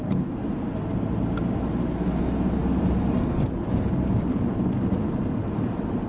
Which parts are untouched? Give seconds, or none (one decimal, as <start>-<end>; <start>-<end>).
0.0-6.1

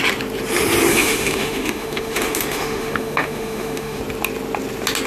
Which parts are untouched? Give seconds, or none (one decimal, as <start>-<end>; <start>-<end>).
0.0-0.9; 4.0-5.1

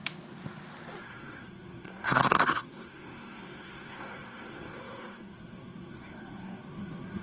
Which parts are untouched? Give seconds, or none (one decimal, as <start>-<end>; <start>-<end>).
0.0-1.0

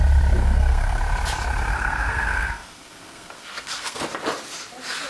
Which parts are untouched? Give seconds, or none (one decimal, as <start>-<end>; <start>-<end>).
0.0-0.4; 1.0-1.7; 4.0-5.1

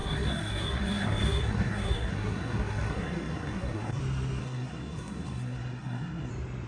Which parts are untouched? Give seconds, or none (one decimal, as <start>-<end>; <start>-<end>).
4.0-4.4; 6.3-6.7

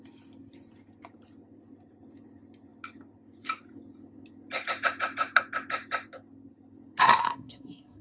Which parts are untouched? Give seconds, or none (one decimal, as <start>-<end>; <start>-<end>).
0.0-7.0

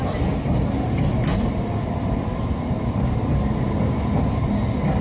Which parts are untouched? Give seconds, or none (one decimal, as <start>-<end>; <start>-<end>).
0.0-5.0